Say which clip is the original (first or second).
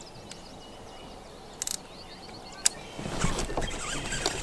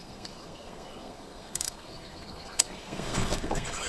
first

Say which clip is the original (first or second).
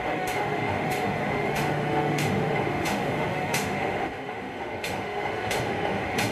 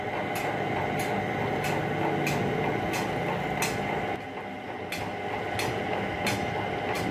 second